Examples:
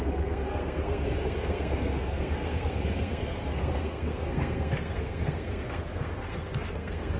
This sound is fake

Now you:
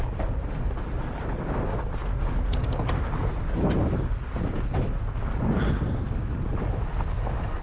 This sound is real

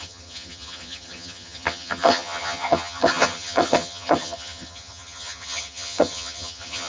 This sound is fake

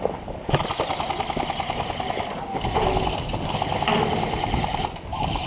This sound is real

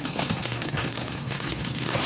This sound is fake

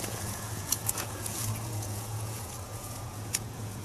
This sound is fake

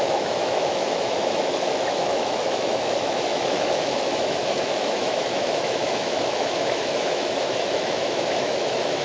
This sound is fake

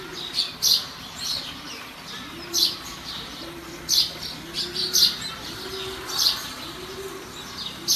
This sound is real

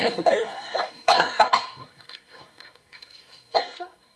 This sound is fake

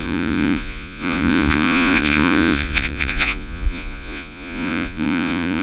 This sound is fake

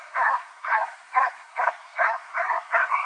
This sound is fake